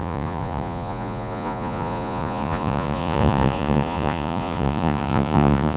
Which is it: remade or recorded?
remade